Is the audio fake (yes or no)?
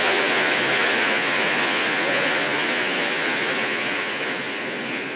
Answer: yes